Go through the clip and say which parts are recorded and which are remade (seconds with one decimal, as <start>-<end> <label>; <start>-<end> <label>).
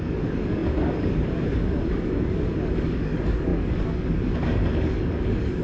0.0-5.6 remade